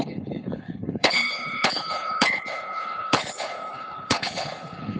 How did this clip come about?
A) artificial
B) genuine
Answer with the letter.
A